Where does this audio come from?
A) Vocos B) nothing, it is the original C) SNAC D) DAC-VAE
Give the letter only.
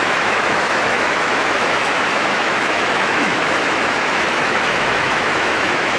D